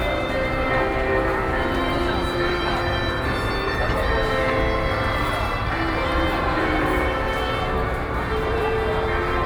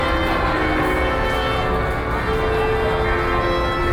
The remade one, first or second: first